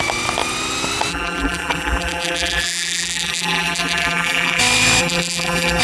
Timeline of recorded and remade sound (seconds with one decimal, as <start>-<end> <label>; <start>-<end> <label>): 0.0-1.1 recorded; 1.1-4.6 remade; 4.6-5.0 recorded; 5.0-5.8 remade